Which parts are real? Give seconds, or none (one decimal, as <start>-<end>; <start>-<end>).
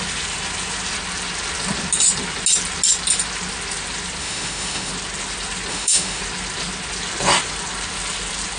0.0-4.2; 4.9-5.7; 6.2-8.6